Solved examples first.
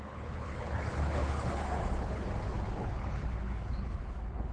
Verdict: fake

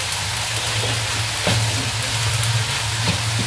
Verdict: real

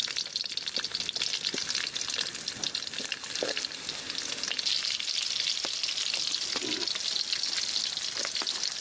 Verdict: real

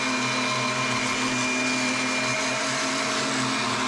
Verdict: real